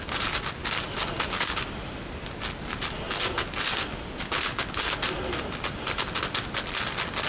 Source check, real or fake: real